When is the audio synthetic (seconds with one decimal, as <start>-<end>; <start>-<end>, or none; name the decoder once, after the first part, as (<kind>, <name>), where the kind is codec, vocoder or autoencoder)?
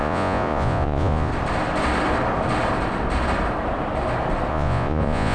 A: 0.0-1.3 (vocoder, Vocos); 4.5-5.3